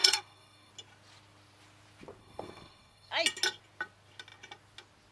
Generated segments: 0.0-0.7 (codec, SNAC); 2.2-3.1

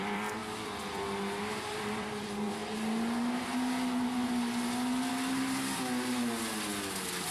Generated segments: 0.0-2.6 (vocoder, BigVGAN v2)

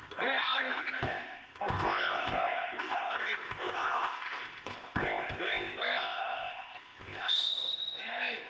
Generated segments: 0.0-8.5 (codec, ZipCodec)

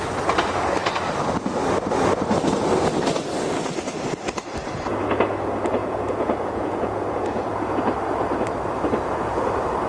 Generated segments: 5.8-7.7 (vocoder, Vocos)